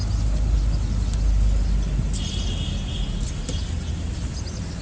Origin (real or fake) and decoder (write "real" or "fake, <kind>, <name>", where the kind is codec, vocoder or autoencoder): real